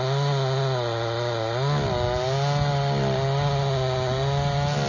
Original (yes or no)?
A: yes